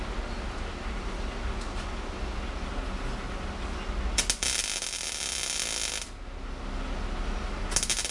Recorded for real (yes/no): yes